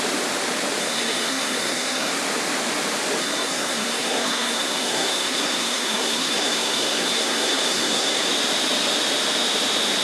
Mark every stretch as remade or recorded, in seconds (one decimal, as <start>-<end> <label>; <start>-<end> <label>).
0.0-0.8 recorded; 0.8-2.1 remade; 2.1-3.2 recorded; 3.2-8.3 remade; 8.3-10.0 recorded